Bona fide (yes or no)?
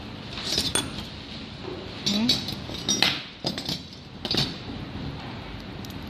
yes